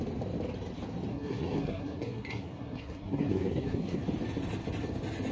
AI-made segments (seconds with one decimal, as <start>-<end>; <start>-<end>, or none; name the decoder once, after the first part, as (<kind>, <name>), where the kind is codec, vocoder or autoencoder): 1.1-4.0 (codec, SNAC)